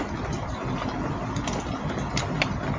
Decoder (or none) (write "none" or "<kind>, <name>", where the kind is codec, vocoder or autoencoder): none